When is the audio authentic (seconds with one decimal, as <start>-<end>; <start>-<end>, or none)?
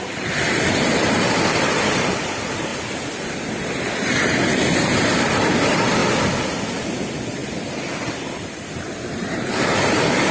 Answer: 2.7-3.4; 6.0-6.8